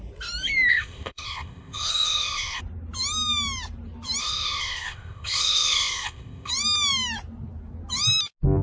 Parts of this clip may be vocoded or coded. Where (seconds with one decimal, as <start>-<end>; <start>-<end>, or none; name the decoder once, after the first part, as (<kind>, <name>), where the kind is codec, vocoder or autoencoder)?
0.7-2.6 (codec, ZipCodec); 4.2-6.5